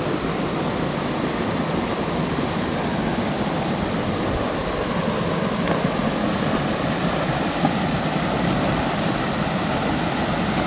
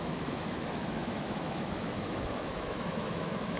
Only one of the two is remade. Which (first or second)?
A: second